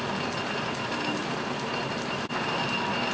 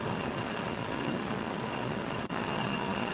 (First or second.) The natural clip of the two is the first